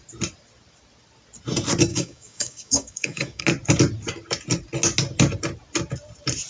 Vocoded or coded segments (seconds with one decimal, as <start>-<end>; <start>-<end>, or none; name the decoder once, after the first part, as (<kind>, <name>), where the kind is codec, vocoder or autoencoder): 1.9-3.4 (codec, DAC)